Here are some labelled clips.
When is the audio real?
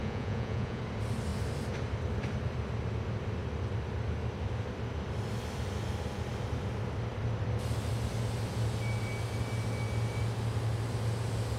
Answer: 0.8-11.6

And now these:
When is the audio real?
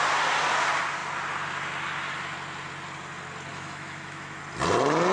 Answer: 0.0-3.5; 4.4-5.1